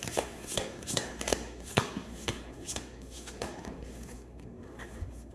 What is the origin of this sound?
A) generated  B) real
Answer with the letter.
A